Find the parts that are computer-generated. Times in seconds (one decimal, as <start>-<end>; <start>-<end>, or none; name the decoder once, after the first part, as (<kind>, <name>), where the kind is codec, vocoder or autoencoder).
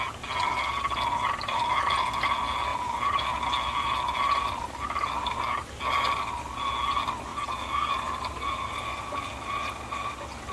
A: none